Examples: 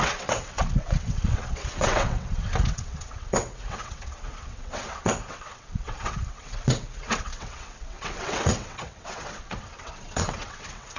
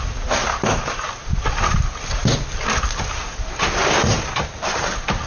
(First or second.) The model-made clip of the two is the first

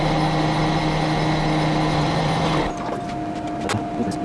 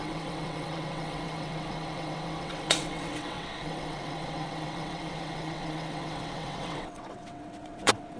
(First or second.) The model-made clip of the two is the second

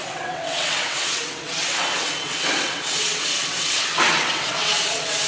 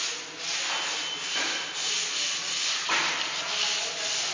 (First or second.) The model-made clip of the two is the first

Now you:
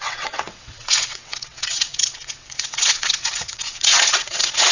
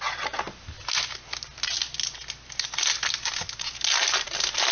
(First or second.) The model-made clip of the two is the first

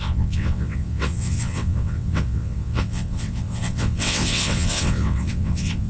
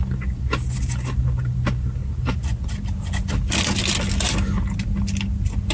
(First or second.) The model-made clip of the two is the first